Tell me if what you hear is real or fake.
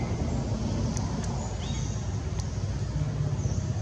real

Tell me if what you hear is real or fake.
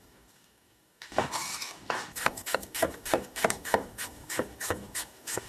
fake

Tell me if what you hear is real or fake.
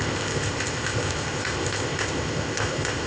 fake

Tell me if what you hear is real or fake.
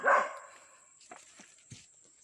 fake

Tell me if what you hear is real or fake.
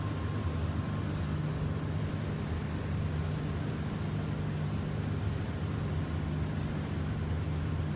real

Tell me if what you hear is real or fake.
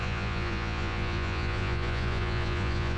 fake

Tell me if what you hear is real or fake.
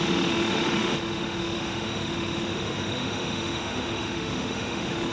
fake